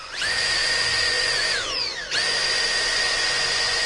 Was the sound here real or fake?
fake